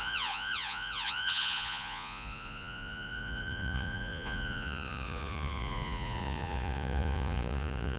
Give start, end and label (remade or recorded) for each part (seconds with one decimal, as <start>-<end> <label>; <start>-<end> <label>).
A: 0.0-8.0 remade